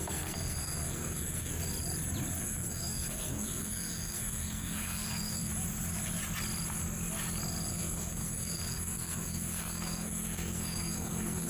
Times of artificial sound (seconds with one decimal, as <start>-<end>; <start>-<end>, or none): 0.0-1.5; 2.4-5.5; 7.7-11.5